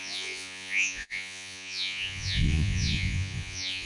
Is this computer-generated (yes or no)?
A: yes